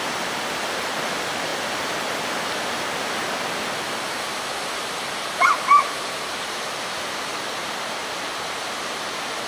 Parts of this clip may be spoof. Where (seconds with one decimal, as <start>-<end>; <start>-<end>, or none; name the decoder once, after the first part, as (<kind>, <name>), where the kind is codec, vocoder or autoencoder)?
4.3-6.6 (vocoder, BigVGAN v2); 7.3-9.5